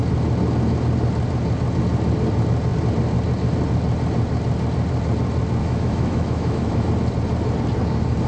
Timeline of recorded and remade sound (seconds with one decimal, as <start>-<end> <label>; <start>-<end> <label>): 0.0-5.6 recorded; 5.6-6.9 remade; 6.9-8.3 recorded